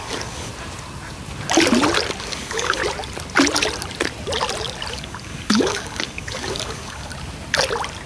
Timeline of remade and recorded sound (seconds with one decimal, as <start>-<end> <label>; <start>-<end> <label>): 0.0-0.5 remade; 0.5-2.2 recorded; 2.2-2.8 remade; 2.8-4.9 recorded; 4.9-7.1 remade; 7.1-8.1 recorded